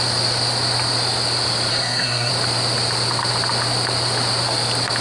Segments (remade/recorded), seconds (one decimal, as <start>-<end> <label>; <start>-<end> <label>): 0.0-1.7 recorded; 1.7-2.3 remade; 2.3-5.0 recorded